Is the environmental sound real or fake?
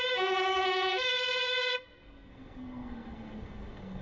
fake